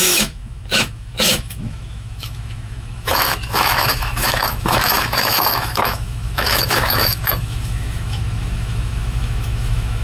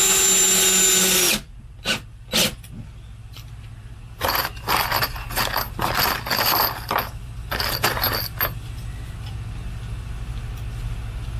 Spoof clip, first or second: first